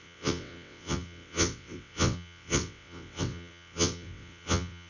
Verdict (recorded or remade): remade